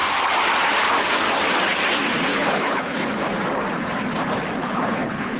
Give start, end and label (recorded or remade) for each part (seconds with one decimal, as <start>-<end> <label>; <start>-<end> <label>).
0.0-2.3 recorded; 2.3-3.1 remade; 3.1-4.6 recorded; 4.6-5.4 remade